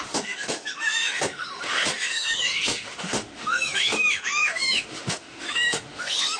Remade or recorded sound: remade